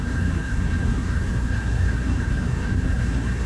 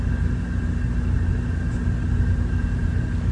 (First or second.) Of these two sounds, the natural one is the second